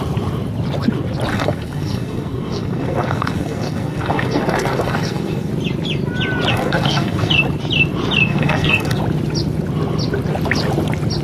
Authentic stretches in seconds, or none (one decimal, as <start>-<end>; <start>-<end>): 0.0-1.3; 5.5-6.5; 7.3-8.3; 9.0-11.2